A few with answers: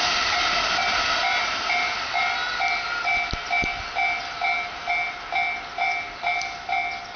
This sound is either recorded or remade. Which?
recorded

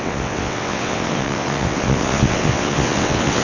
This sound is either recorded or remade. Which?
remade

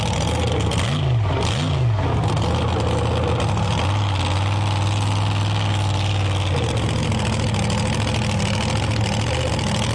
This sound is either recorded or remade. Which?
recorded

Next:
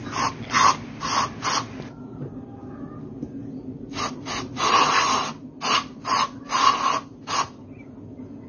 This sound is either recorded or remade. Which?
recorded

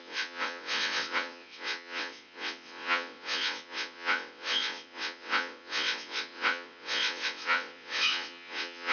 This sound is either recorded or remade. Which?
remade